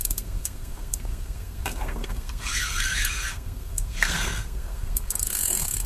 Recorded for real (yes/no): no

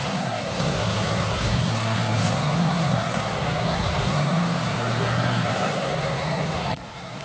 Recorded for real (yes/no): no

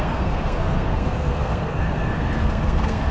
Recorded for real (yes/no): no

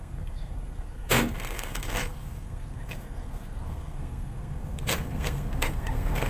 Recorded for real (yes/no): no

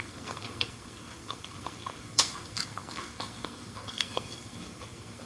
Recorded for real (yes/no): no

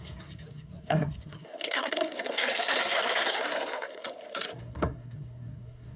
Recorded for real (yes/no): no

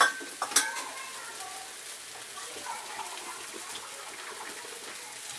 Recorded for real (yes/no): yes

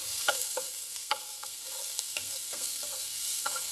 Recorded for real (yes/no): no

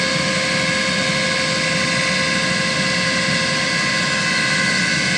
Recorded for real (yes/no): yes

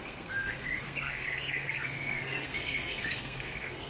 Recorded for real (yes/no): no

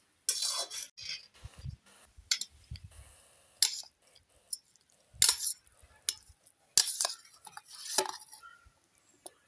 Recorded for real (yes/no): yes